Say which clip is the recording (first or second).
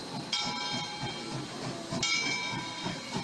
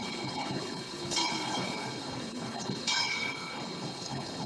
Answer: first